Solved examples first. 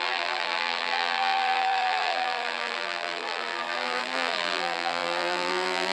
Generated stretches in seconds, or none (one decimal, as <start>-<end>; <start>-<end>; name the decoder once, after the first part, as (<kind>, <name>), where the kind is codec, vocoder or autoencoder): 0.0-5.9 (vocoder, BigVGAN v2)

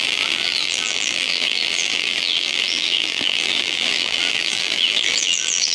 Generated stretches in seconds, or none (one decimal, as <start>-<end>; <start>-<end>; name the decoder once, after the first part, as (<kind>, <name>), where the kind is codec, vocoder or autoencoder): 0.0-5.7 (vocoder, BigVGAN v2)

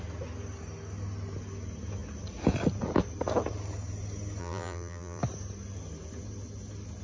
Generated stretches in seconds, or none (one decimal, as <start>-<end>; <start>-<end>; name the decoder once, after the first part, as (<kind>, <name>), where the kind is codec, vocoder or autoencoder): 4.4-5.2 (vocoder, BigVGAN v2)